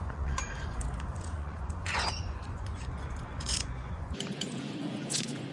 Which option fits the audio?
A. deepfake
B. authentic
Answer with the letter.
A